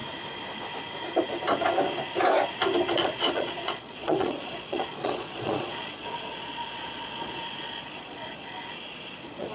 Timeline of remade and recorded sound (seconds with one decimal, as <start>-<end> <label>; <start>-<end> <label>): 0.0-2.9 recorded; 2.9-9.5 remade

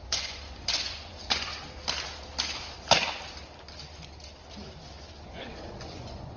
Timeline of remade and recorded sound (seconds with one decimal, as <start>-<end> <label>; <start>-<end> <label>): 0.0-1.5 remade; 1.5-5.2 recorded; 5.2-6.4 remade